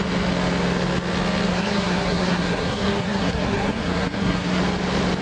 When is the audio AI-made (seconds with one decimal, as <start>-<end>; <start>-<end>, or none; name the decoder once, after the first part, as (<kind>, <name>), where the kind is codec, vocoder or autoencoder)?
1.5-4.6 (codec, SNAC)